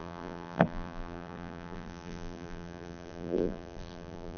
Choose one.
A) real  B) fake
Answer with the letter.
B